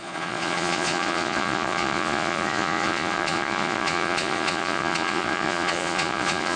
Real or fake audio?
fake